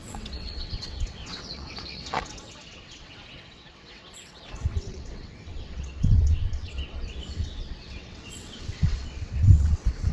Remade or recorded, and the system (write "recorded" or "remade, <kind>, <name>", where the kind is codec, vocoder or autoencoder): remade, vocoder, WaveNeXt